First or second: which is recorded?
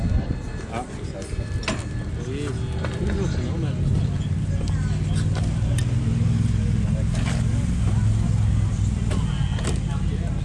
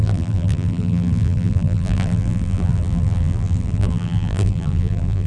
first